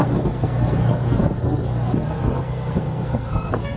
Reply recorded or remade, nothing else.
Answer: remade